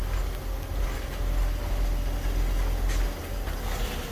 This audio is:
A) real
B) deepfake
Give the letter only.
A